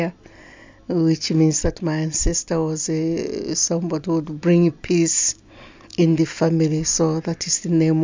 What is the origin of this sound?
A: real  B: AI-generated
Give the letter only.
A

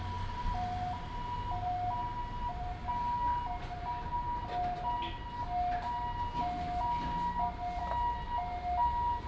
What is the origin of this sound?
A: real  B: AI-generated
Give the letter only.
A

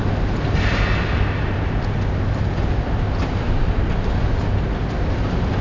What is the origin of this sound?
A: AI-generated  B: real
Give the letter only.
B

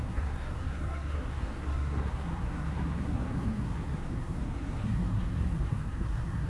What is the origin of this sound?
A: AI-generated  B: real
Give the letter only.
A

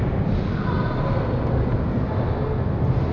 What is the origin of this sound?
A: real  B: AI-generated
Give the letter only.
A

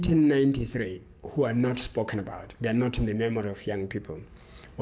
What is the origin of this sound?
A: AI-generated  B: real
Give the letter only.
A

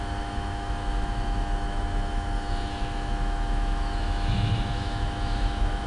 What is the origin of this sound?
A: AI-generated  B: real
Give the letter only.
A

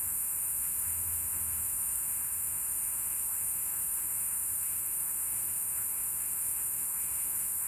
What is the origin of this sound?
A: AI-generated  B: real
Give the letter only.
A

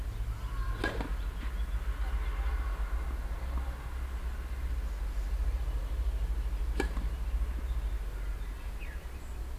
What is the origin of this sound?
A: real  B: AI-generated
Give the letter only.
A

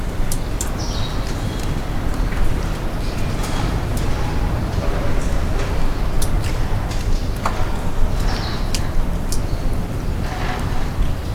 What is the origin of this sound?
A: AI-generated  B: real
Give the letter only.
B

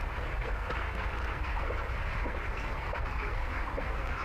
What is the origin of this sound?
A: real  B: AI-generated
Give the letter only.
B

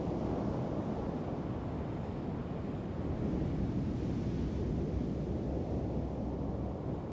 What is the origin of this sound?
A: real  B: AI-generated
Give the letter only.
A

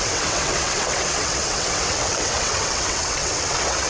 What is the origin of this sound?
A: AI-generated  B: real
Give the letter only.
A